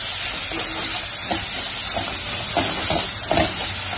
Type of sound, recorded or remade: recorded